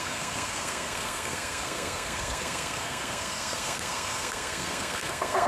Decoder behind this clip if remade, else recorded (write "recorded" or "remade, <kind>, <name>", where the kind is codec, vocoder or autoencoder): remade, codec, SNAC